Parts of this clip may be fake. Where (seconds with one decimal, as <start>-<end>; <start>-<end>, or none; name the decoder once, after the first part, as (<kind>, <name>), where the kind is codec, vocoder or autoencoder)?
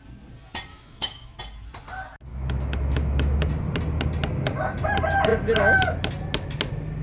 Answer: 0.7-1.4 (autoencoder, DAC-VAE); 2.3-3.5